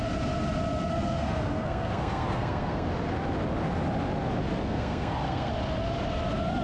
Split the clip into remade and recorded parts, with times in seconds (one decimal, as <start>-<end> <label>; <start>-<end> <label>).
0.0-0.9 recorded; 0.9-2.9 remade; 2.9-4.6 recorded; 4.6-5.5 remade; 5.5-6.6 recorded